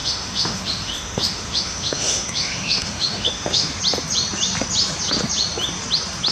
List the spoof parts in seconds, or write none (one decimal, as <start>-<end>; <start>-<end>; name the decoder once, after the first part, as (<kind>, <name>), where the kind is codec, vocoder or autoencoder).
0.0-3.8 (autoencoder, DAC-VAE)